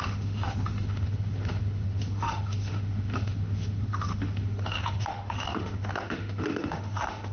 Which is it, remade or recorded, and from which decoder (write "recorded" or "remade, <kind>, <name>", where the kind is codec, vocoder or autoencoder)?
remade, autoencoder, DAC-VAE